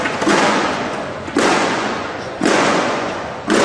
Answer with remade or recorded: remade